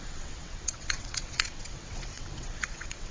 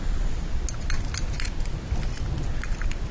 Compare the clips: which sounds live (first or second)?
second